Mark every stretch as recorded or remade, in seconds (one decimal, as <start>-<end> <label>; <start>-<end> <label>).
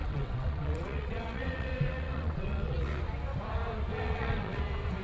0.0-3.0 remade; 3.0-3.9 recorded; 3.9-4.6 remade; 4.6-5.0 recorded